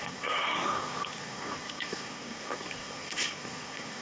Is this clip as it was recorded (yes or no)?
no